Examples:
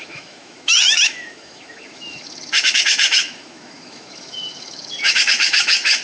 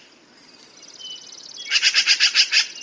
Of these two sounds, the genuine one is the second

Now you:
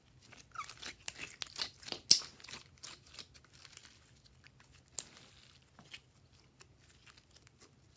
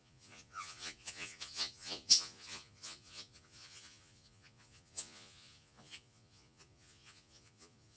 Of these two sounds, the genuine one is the first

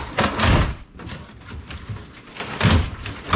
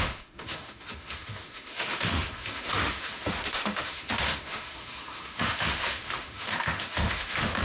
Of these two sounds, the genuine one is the first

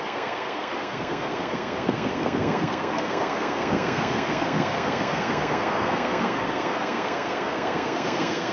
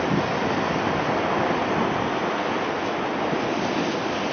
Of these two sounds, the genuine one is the second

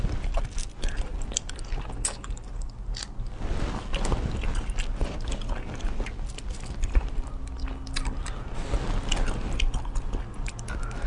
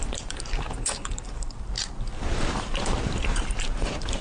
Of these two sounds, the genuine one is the first